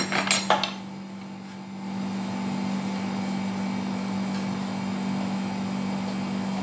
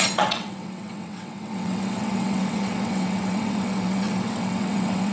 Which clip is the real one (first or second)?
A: first